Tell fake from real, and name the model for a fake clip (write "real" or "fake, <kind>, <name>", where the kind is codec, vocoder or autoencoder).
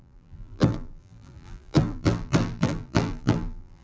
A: fake, vocoder, BigVGAN v2